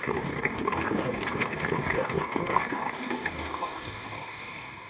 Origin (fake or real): fake